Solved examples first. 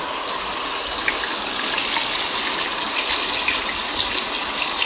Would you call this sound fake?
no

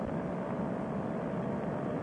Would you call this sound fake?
no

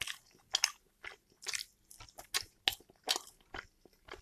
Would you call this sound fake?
no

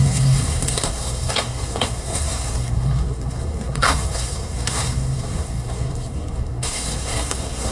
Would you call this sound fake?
yes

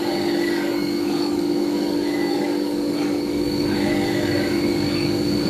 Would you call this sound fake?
yes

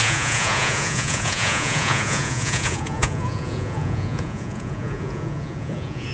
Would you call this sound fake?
yes